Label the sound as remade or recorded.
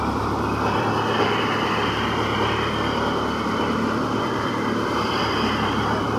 remade